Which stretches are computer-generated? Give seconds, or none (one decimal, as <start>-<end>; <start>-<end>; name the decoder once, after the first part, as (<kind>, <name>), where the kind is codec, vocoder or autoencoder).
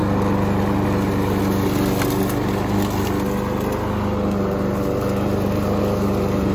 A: none